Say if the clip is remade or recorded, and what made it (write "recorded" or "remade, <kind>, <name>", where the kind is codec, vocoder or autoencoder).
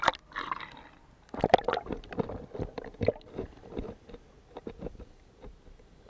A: recorded